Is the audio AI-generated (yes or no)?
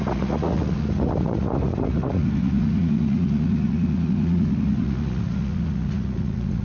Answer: yes